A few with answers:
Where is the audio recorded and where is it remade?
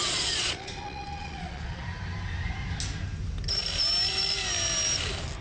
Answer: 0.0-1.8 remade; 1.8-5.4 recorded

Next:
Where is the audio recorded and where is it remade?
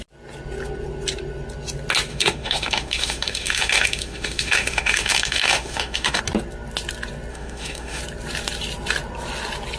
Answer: 0.0-2.1 recorded; 2.1-6.2 remade; 6.2-7.3 recorded; 7.3-8.0 remade; 8.0-9.8 recorded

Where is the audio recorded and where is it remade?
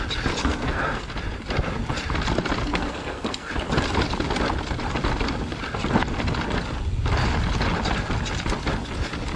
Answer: 0.0-0.4 recorded; 0.4-1.1 remade; 1.1-2.6 recorded; 2.6-3.5 remade; 3.5-9.4 recorded